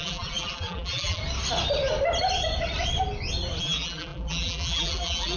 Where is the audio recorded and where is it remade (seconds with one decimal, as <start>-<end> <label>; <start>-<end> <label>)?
0.0-1.2 remade; 1.2-3.6 recorded; 3.6-5.4 remade

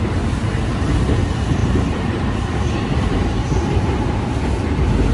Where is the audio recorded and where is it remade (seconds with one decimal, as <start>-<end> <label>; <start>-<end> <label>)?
0.0-0.4 recorded; 0.4-1.0 remade; 1.0-1.6 recorded; 1.6-4.4 remade; 4.4-5.1 recorded

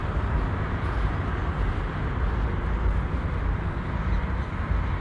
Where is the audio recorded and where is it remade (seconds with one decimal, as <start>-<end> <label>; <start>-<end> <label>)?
0.0-5.0 recorded

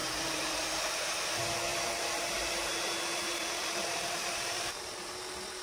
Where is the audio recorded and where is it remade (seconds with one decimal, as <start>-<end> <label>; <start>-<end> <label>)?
0.0-1.1 remade; 1.1-1.7 recorded; 1.7-5.1 remade; 5.1-5.6 recorded

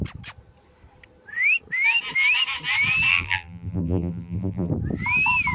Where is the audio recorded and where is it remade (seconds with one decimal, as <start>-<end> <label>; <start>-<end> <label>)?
0.0-3.1 recorded; 3.1-4.7 remade; 4.7-5.5 recorded